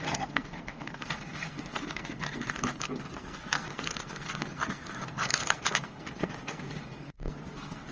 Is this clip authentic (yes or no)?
no